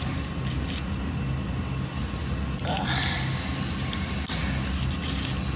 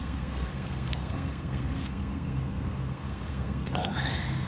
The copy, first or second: second